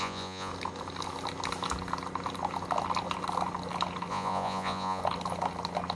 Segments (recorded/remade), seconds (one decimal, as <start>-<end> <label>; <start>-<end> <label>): 0.0-0.5 remade; 0.5-4.1 recorded; 4.1-5.0 remade; 5.0-6.0 recorded